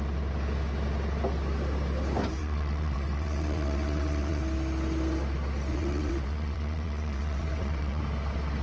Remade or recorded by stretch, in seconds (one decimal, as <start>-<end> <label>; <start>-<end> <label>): 0.0-2.4 recorded; 2.4-4.4 remade; 4.4-5.7 recorded; 5.7-8.0 remade; 8.0-8.6 recorded